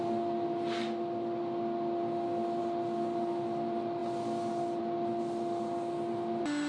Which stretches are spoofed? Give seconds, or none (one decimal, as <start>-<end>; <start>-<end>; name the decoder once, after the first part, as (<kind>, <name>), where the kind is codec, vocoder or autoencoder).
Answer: none